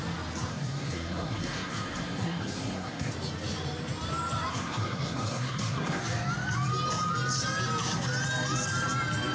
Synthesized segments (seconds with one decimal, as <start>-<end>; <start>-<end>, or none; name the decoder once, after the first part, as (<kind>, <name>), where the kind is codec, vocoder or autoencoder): 0.5-3.1 (codec, SNAC); 4.5-6.0